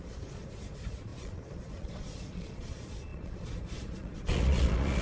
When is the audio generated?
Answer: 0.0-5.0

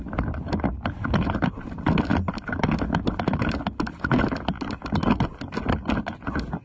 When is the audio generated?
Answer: none